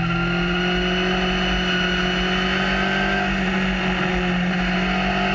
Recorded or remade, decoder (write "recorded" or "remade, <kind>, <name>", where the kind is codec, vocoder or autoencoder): recorded